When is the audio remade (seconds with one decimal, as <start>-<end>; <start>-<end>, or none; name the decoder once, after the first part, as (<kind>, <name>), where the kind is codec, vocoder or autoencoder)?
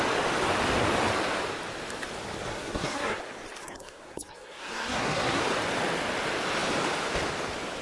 2.5-3.2 (codec, SNAC); 3.6-5.4